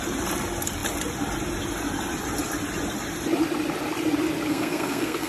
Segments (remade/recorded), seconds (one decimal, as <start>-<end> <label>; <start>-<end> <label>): 0.0-4.5 recorded; 4.5-5.3 remade